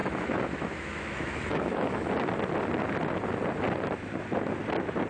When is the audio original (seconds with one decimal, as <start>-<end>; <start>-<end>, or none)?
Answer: 2.1-5.1